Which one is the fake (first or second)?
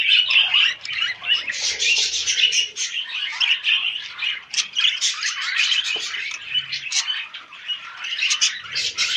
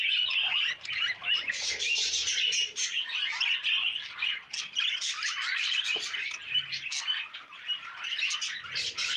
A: first